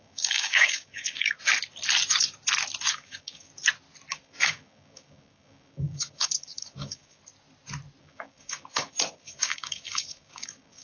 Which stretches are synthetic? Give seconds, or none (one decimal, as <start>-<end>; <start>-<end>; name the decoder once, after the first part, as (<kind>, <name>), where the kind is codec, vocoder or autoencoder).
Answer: 0.0-1.4 (codec, DAC); 2.9-3.5; 4.1-7.2; 8.0-10.8